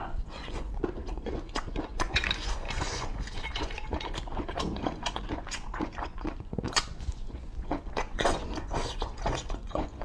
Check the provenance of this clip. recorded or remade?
remade